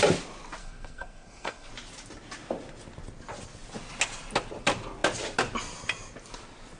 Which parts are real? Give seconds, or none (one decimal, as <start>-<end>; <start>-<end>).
0.0-0.6; 1.7-6.8